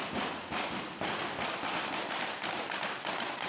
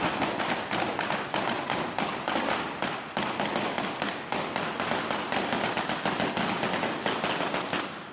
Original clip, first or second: second